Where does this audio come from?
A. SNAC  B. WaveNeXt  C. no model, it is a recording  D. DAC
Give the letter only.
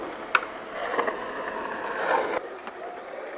C